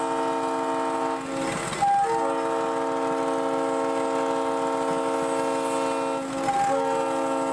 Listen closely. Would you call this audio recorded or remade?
recorded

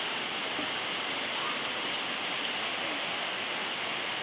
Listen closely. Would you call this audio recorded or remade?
recorded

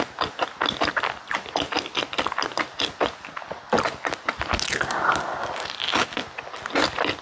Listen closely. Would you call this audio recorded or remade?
recorded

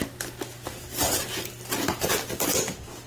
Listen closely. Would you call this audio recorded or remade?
recorded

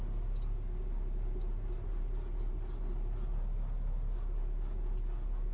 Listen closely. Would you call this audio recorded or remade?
recorded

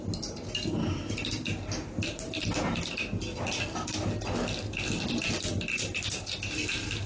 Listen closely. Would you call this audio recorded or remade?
recorded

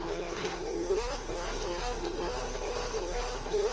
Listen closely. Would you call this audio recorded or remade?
remade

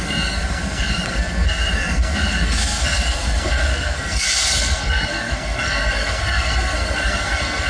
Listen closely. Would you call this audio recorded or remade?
remade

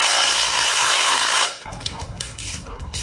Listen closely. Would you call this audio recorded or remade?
remade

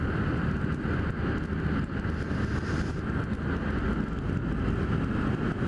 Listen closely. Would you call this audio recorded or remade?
recorded